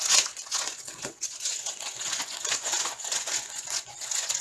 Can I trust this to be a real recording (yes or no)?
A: no